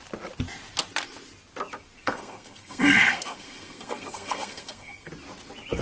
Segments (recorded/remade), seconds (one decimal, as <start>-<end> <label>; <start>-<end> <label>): 0.0-2.0 recorded; 2.0-5.1 remade; 5.1-5.8 recorded